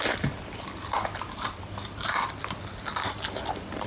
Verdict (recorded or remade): recorded